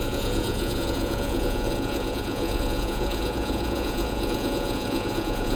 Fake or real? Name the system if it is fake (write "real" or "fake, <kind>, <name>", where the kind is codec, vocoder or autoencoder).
fake, vocoder, Vocos